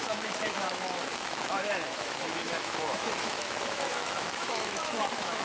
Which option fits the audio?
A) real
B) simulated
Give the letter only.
B